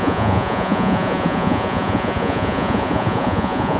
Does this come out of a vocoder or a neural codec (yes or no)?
yes